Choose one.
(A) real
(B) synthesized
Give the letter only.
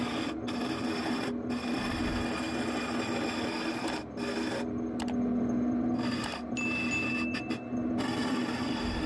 A